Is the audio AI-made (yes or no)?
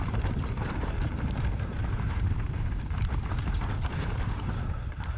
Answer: yes